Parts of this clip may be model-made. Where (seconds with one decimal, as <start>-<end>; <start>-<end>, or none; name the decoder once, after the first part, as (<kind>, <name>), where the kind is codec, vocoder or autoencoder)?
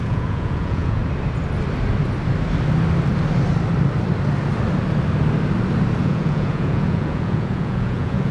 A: 0.0-1.0 (vocoder, Vocos); 6.0-8.3